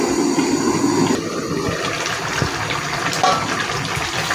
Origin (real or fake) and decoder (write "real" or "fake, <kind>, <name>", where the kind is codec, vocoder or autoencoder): real